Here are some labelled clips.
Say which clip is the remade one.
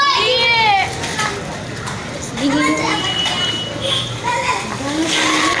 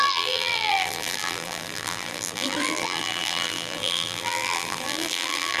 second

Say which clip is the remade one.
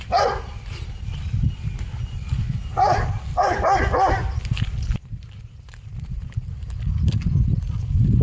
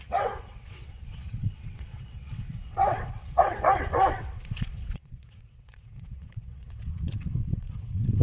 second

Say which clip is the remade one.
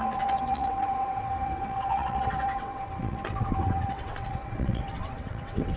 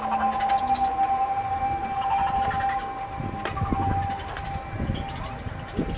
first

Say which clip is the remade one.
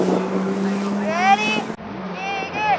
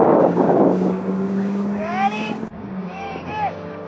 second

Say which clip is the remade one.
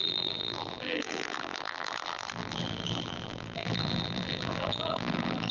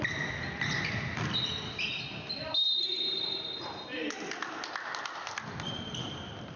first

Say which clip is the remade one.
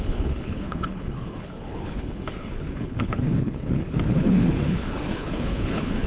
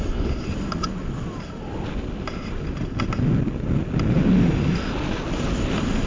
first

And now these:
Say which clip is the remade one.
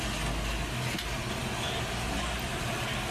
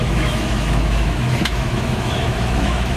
second